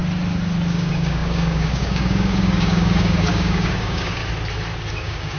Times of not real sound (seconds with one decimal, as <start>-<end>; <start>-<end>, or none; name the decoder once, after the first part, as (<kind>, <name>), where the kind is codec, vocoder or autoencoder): 0.7-4.2 (codec, DAC); 4.9-5.4